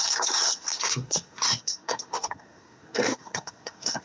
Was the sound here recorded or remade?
remade